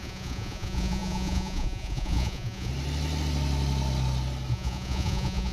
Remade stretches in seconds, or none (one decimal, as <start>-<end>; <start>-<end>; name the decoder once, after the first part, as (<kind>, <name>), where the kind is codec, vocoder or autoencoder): 0.0-2.7 (vocoder, Vocos); 4.5-5.5